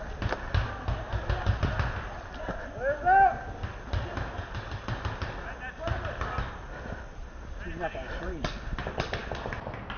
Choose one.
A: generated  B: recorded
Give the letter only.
B